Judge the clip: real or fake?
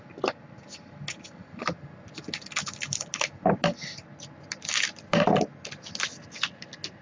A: real